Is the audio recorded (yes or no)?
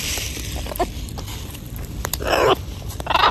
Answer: no